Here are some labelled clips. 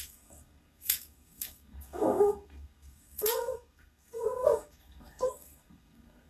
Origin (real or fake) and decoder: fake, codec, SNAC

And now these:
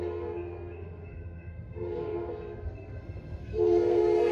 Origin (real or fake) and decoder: fake, codec, SNAC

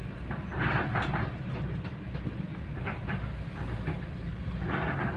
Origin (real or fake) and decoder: real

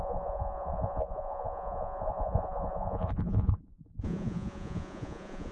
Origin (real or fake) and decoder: fake, vocoder, Vocos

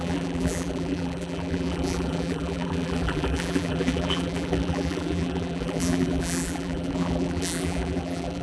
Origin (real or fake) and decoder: fake, vocoder, BigVGAN v2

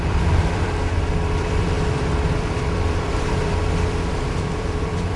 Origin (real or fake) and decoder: fake, vocoder, BigVGAN v2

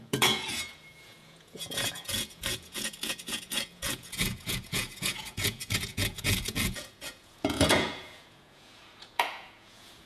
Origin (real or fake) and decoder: fake, vocoder, Vocos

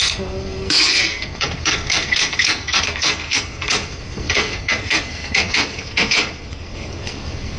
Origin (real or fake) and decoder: fake, codec, SNAC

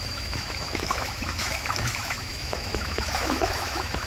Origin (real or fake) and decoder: fake, autoencoder, DAC-VAE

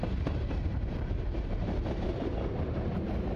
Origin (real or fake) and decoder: fake, vocoder, BigVGAN v2